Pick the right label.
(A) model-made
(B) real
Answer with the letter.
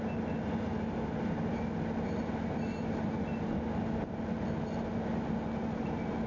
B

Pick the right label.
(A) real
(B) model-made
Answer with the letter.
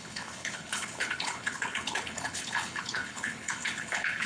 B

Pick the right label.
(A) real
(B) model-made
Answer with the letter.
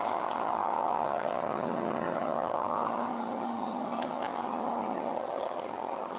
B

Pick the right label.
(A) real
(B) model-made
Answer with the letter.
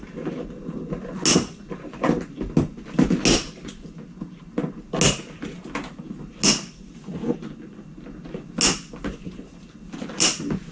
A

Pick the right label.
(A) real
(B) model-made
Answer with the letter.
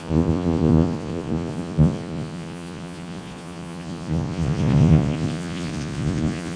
B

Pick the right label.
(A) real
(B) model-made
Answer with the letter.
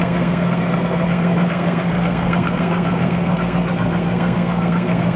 B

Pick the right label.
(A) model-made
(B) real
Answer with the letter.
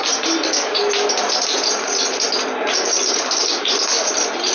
A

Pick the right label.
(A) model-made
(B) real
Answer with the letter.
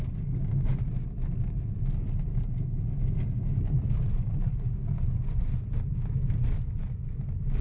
B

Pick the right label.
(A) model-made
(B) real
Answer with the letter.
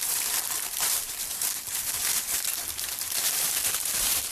A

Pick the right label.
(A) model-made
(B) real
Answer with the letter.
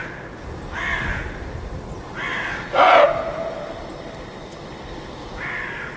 B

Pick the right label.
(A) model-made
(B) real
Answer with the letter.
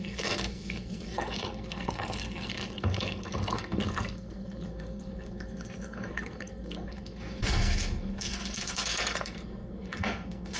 A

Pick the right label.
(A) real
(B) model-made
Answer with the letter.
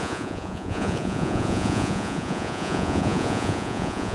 B